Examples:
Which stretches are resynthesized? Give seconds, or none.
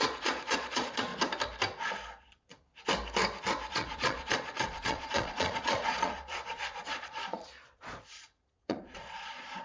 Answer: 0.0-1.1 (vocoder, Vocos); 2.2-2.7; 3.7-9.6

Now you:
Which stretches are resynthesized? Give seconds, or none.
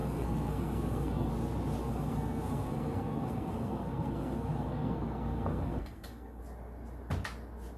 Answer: 0.0-1.3 (codec, SNAC); 1.8-6.4